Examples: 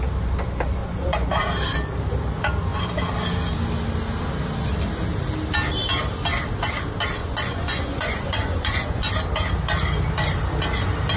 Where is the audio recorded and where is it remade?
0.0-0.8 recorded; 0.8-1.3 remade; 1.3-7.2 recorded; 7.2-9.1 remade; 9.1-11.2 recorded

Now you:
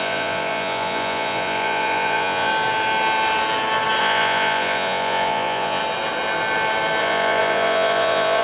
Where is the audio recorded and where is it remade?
0.0-2.5 remade; 2.5-4.0 recorded; 4.0-5.8 remade; 5.8-7.0 recorded; 7.0-8.4 remade

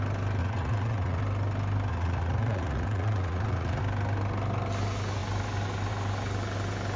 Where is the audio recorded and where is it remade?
0.0-0.4 recorded; 0.4-1.2 remade; 1.2-1.9 recorded; 1.9-3.8 remade; 3.8-7.0 recorded

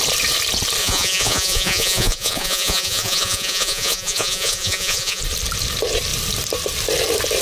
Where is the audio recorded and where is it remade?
0.0-0.8 recorded; 0.8-5.2 remade; 5.2-7.4 recorded

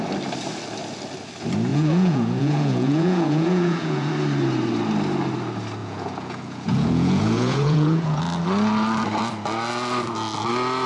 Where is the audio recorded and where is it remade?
0.0-1.7 recorded; 1.7-4.1 remade; 4.1-5.8 recorded; 5.8-8.2 remade; 8.2-10.9 recorded